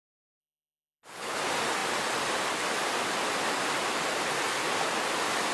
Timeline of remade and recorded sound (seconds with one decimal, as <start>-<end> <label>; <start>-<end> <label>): 0.0-0.4 recorded; 0.4-1.4 remade; 1.4-5.5 recorded